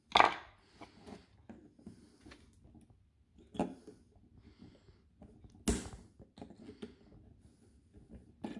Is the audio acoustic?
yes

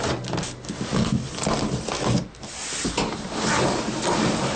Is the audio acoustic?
yes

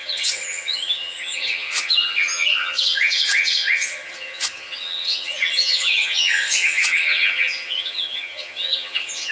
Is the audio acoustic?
no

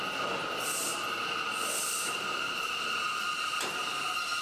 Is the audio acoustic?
yes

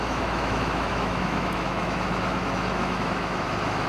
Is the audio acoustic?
no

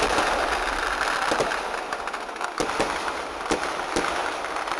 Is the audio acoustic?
yes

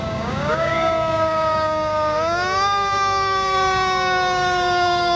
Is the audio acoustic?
no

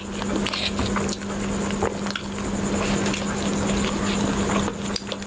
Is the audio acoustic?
yes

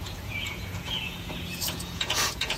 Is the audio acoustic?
no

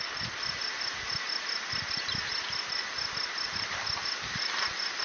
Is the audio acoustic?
yes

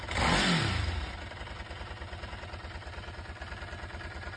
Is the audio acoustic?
yes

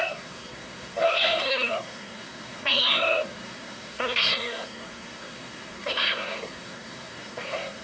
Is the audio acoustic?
no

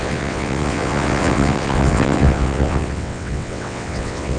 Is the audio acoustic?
no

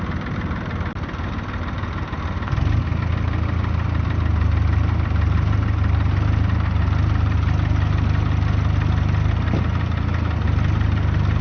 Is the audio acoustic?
yes